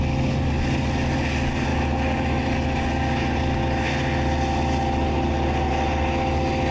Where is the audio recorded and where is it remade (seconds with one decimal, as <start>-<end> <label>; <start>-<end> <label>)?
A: 0.0-6.7 recorded